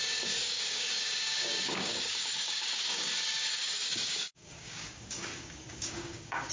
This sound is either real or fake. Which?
fake